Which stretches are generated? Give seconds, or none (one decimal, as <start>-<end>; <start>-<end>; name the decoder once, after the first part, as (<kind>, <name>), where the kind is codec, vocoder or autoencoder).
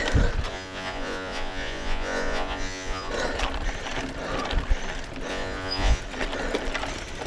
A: 0.5-3.1 (vocoder, Vocos); 5.3-6.0